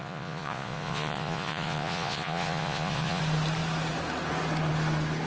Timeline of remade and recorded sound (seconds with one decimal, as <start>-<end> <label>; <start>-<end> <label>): 0.0-3.2 remade; 3.2-5.3 recorded